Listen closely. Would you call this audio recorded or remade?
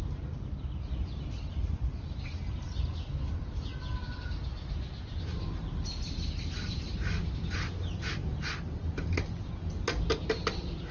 recorded